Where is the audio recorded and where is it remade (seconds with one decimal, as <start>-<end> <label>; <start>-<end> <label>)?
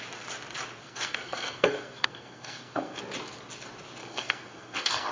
0.0-0.8 recorded; 0.8-3.0 remade; 3.0-4.0 recorded; 4.0-5.1 remade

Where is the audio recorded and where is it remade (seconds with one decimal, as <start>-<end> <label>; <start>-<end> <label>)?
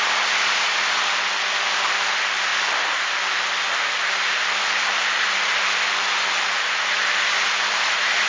0.0-8.3 recorded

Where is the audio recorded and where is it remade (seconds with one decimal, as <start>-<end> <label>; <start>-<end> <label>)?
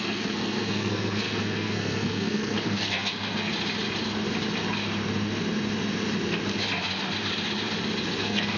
0.0-3.5 remade; 3.5-8.2 recorded; 8.2-8.6 remade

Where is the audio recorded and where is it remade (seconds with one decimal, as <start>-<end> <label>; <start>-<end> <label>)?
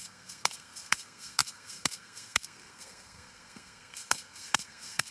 0.0-5.1 remade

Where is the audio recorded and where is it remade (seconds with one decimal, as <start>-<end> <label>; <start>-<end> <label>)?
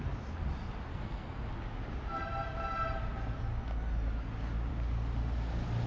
0.0-0.9 recorded; 0.9-1.5 remade; 1.5-5.9 recorded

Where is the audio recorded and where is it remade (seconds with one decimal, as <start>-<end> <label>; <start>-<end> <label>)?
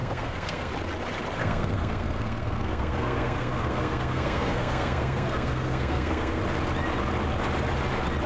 0.0-0.7 remade; 0.7-1.4 recorded; 1.4-6.4 remade; 6.4-8.3 recorded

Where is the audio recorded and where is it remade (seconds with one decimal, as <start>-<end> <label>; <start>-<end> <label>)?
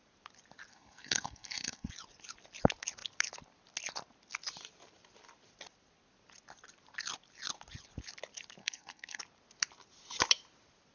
0.0-0.7 recorded; 0.7-1.9 remade; 1.9-8.6 recorded; 8.6-9.2 remade; 9.2-10.9 recorded